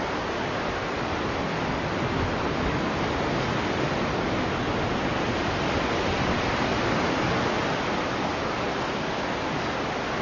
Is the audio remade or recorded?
recorded